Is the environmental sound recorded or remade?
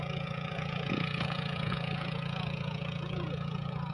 remade